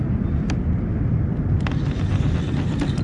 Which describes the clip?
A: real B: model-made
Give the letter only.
A